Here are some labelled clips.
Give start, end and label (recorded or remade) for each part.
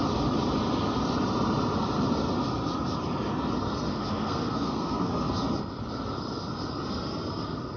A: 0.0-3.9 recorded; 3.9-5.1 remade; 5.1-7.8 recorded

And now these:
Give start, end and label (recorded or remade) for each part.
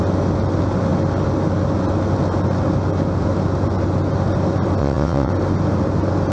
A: 0.0-4.8 recorded; 4.8-5.3 remade; 5.3-6.3 recorded